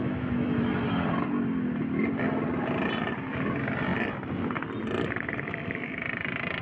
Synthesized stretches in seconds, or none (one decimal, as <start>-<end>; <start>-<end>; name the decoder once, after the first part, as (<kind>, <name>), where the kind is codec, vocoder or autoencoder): 0.0-0.6 (autoencoder, DAC-VAE)